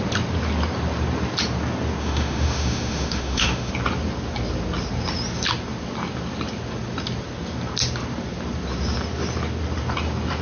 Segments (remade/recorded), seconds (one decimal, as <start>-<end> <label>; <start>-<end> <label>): 0.0-2.0 recorded; 2.0-3.7 remade; 3.7-10.4 recorded